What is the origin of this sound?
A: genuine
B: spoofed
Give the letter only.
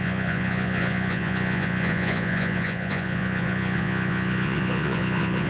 B